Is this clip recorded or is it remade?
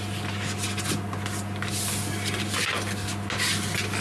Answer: recorded